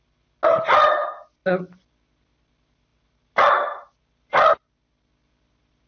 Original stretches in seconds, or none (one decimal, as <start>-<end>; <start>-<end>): 0.0-5.9